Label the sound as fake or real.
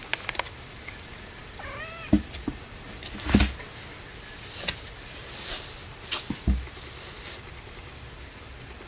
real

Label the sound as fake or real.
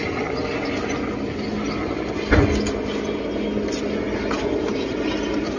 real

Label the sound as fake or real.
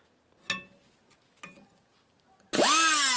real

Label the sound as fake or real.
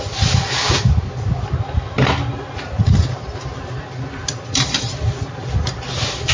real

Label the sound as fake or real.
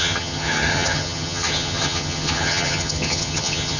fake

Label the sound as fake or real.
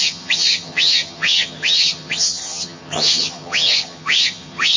fake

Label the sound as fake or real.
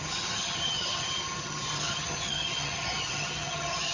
fake